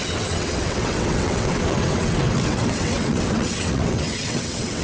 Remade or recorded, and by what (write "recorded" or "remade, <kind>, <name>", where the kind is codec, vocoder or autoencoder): remade, vocoder, WaveNeXt